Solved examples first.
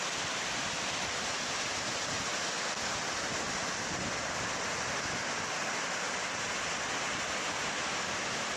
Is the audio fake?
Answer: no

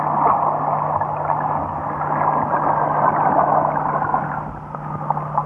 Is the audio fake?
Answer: no